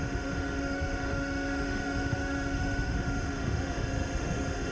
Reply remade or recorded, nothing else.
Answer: remade